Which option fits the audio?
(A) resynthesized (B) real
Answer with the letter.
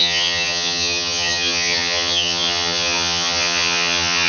A